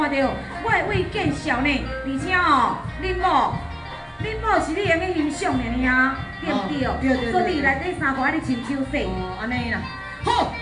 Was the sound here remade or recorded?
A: recorded